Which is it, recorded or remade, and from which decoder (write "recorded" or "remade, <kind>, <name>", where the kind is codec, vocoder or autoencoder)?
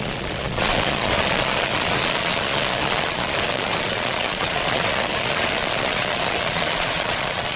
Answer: remade, vocoder, Vocos